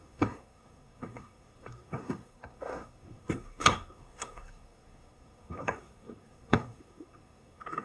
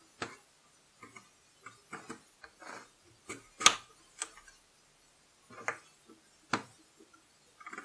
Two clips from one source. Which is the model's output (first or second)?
first